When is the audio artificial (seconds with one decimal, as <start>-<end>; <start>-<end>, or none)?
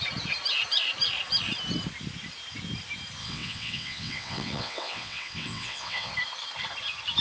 3.2-6.1